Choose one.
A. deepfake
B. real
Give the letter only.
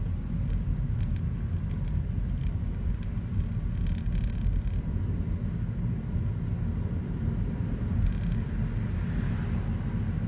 B